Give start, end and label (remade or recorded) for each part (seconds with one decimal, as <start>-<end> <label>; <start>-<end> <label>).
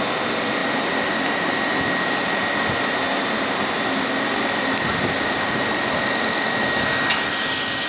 0.0-7.9 recorded